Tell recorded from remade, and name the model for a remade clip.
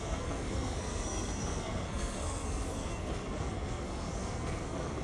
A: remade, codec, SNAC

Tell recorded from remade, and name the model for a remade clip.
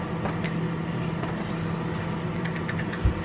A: recorded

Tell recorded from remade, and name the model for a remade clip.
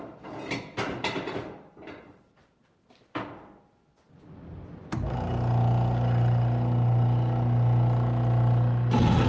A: recorded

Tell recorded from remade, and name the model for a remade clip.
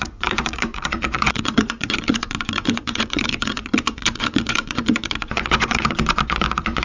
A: remade, vocoder, Vocos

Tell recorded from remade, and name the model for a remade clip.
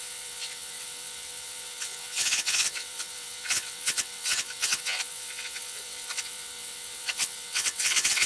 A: remade, vocoder, WaveNeXt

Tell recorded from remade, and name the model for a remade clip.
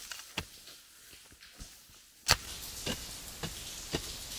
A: recorded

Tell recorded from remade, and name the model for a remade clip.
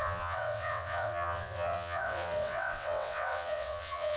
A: remade, vocoder, WaveNeXt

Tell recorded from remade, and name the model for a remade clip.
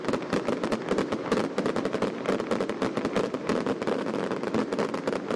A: recorded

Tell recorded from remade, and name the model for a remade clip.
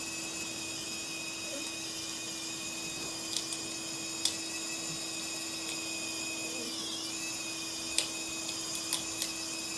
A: recorded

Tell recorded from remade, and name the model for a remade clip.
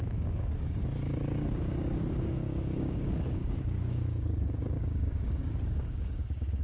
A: remade, codec, DAC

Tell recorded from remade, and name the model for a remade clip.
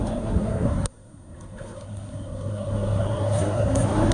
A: remade, codec, SNAC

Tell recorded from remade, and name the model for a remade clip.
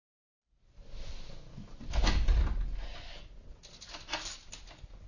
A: recorded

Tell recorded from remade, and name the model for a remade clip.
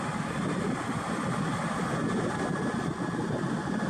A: recorded